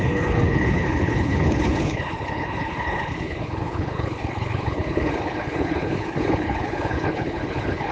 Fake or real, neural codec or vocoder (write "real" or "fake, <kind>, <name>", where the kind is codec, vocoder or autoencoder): fake, codec, HILCodec